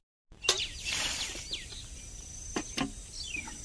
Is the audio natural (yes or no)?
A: yes